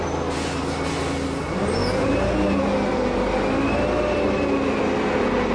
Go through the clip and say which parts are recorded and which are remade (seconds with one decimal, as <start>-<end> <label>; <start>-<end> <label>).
0.0-5.5 recorded